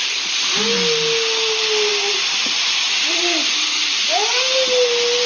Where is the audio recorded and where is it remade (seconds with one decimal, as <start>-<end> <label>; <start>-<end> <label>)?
0.0-5.3 recorded